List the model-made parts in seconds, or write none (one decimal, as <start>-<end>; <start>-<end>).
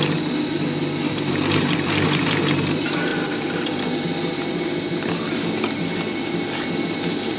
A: 3.1-3.7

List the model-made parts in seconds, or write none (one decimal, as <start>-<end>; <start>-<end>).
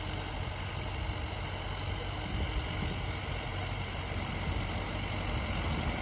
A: 3.5-4.3